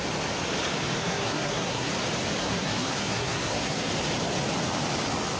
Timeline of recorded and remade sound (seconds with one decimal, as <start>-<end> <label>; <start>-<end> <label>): 0.0-1.0 recorded; 1.0-1.9 remade; 1.9-2.4 recorded; 2.4-3.9 remade; 3.9-5.4 recorded

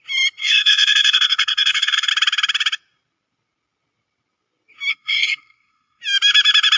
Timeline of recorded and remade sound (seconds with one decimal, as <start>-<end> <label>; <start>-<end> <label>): 0.0-0.4 recorded; 0.4-2.1 remade; 2.1-4.9 recorded; 4.9-6.0 remade; 6.0-6.8 recorded

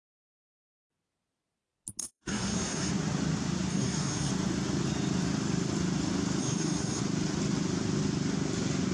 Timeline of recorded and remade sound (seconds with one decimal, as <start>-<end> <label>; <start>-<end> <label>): 0.0-2.0 recorded; 2.0-2.9 remade; 2.9-3.7 recorded; 3.7-4.3 remade; 4.3-6.4 recorded; 6.4-7.0 remade; 7.0-8.9 recorded

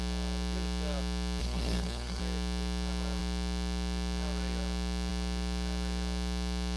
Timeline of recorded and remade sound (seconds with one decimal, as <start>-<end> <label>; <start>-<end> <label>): 0.0-1.4 recorded; 1.4-2.2 remade; 2.2-6.8 recorded

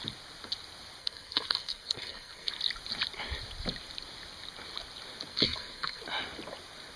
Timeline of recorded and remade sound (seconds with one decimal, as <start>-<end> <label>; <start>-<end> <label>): 0.0-1.0 recorded; 1.0-2.5 remade; 2.5-5.3 recorded; 5.3-6.0 remade; 6.0-7.0 recorded

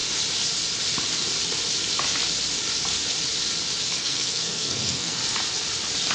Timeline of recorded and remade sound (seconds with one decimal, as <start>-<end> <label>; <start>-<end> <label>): 0.0-4.0 recorded; 4.0-5.2 remade; 5.2-6.1 recorded